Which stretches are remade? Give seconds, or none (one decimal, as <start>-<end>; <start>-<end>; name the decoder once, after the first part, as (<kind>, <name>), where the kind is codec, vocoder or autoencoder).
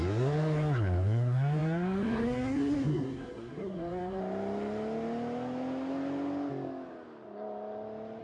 0.0-4.2 (codec, SNAC)